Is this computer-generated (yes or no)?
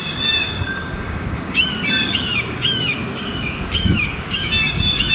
yes